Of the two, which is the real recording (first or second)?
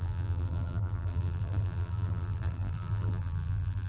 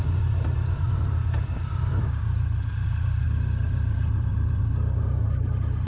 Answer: second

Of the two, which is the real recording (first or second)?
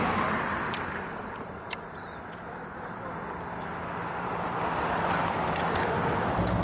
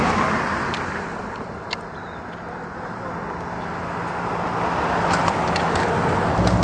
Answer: second